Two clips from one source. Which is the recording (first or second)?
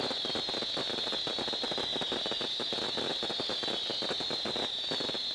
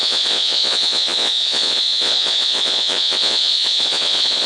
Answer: first